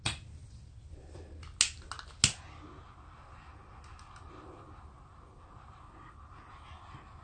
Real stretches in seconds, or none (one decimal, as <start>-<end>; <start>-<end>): 0.0-7.2